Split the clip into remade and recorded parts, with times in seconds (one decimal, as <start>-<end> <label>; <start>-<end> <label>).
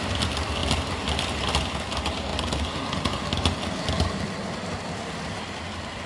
0.0-6.1 recorded